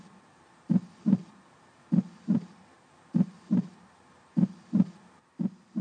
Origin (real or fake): fake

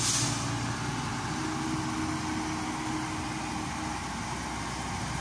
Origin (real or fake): real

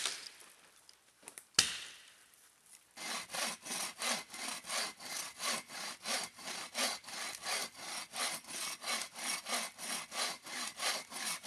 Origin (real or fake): real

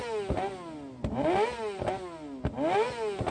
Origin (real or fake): real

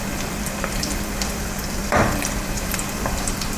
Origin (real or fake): fake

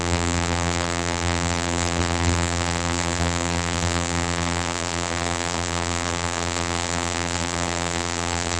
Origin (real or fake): fake